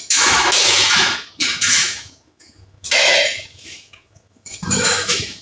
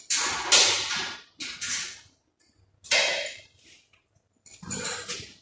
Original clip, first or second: second